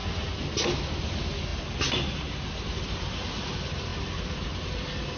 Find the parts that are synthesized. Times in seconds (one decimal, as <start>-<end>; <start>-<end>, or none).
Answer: none